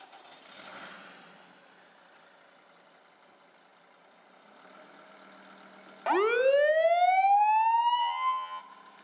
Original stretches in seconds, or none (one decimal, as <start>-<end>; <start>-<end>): 0.0-8.0; 8.6-9.0